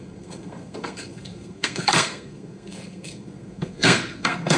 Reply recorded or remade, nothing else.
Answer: remade